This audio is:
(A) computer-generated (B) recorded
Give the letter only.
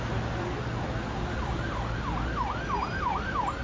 B